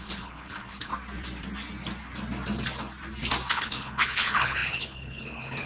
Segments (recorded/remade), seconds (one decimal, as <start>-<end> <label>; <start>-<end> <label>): 0.0-0.9 remade; 0.9-3.5 recorded; 3.5-5.7 remade

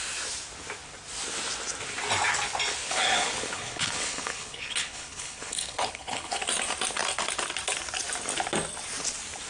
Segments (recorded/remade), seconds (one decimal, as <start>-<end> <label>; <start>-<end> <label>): 0.0-2.8 recorded; 2.8-6.4 remade; 6.4-9.5 recorded

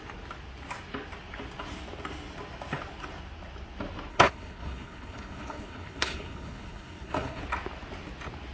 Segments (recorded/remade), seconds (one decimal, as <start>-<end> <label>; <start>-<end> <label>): 0.0-4.1 recorded; 4.1-7.4 remade; 7.4-8.5 recorded

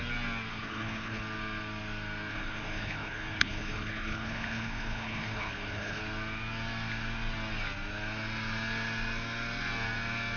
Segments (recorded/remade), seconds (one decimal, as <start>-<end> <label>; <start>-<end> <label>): 0.0-0.5 recorded; 0.5-1.2 remade; 1.2-2.3 recorded; 2.3-6.0 remade; 6.0-10.4 recorded

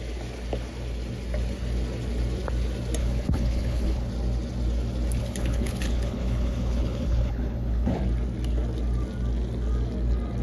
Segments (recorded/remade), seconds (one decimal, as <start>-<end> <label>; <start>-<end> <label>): 0.0-3.0 recorded; 3.0-4.1 remade; 4.1-5.2 recorded; 5.2-8.0 remade; 8.0-10.4 recorded

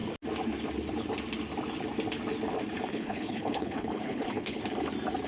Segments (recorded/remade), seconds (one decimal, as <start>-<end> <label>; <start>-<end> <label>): 0.0-2.9 recorded; 2.9-4.6 remade; 4.6-5.3 recorded

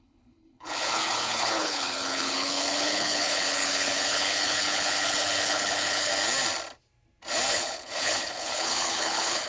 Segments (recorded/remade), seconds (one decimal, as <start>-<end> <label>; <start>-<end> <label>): 0.0-6.1 remade; 6.1-7.5 recorded; 7.5-9.5 remade